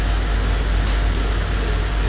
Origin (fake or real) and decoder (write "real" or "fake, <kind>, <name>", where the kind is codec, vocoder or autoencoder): real